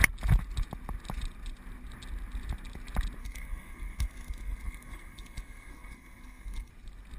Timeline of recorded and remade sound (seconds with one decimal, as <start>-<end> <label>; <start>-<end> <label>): 0.0-3.2 recorded; 3.2-6.7 remade; 6.7-7.2 recorded